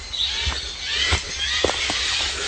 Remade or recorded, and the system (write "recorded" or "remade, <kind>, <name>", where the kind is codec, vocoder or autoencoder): recorded